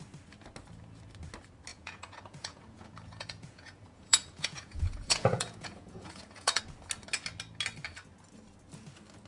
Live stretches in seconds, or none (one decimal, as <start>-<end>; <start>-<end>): 0.0-1.7; 6.6-9.3